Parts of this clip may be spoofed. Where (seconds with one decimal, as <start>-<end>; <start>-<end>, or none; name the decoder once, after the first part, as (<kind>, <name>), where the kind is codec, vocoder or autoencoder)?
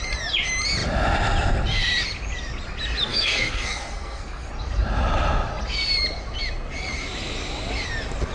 3.1-4.5 (codec, SNAC)